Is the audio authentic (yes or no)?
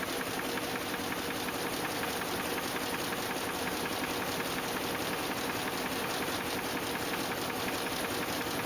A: yes